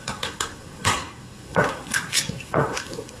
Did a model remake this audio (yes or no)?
yes